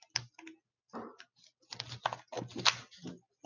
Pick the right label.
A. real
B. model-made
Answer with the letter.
A